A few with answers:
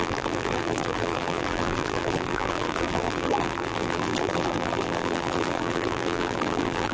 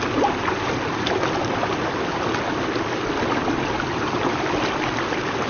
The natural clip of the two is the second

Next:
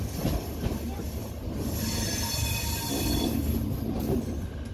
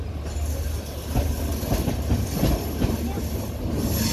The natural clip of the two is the second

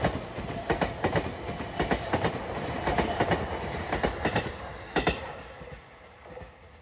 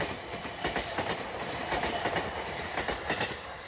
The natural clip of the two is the first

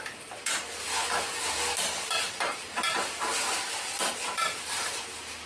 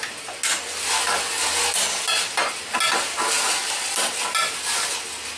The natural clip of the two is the second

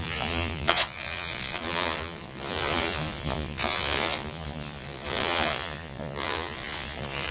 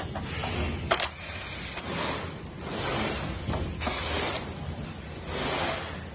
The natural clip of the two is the second